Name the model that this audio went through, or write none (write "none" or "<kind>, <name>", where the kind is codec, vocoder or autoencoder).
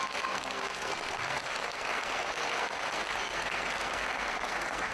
codec, SNAC